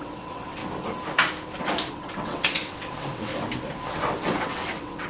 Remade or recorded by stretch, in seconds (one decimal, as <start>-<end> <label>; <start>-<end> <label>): 0.0-0.6 remade; 0.6-1.9 recorded; 1.9-3.3 remade; 3.3-4.4 recorded; 4.4-5.1 remade